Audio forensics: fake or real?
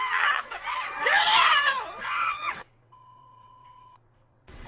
fake